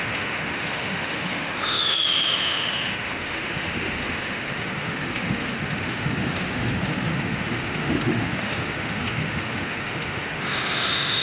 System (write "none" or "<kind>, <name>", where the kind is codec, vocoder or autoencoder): autoencoder, DAC-VAE